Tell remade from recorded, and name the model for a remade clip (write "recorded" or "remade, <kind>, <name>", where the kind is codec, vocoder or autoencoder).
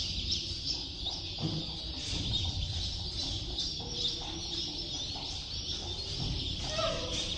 recorded